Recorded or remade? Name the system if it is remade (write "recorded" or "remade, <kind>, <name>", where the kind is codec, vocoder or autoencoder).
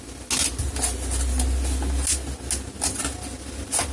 recorded